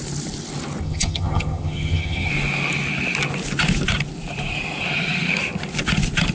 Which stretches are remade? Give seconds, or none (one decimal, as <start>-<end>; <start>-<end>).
0.8-2.3